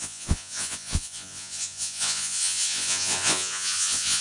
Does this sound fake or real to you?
fake